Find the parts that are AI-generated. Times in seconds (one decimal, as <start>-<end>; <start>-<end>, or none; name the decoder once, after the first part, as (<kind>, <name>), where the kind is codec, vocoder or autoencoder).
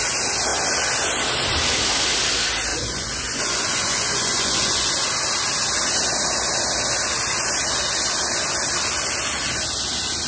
2.7-4.9 (vocoder, Vocos)